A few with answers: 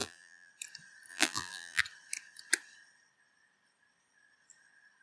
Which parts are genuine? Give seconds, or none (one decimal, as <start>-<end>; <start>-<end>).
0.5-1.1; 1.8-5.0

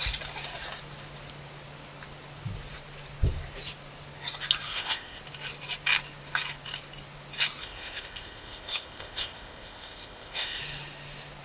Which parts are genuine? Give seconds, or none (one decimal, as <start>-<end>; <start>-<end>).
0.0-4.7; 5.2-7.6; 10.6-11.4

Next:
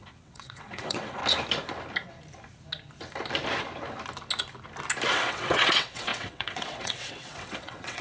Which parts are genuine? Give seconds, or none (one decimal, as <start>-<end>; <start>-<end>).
1.2-5.1

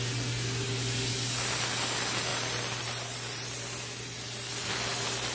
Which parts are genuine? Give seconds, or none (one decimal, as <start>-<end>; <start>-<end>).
0.0-5.3